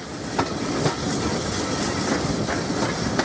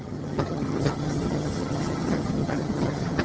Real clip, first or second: first